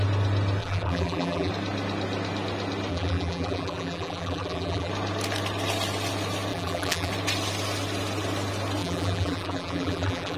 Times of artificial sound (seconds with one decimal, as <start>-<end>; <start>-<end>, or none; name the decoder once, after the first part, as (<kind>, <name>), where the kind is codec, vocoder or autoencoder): 0.6-1.5 (vocoder, BigVGAN v2); 2.9-4.9; 6.5-7.1; 8.8-10.4